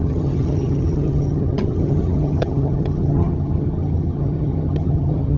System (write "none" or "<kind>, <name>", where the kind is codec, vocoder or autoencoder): vocoder, HiFi-GAN